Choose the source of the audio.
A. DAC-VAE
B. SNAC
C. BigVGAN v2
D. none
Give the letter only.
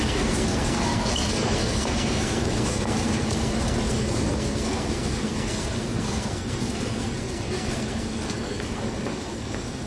B